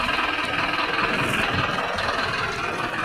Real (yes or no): yes